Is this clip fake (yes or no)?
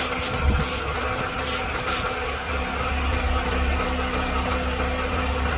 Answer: no